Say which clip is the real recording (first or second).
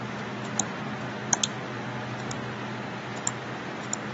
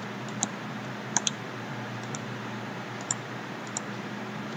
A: first